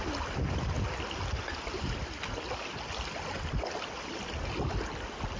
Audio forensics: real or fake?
real